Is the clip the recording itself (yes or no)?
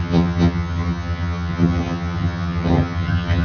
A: no